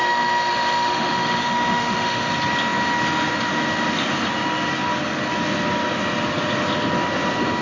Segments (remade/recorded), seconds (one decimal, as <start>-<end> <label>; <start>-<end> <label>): 0.0-2.3 remade; 2.3-7.6 recorded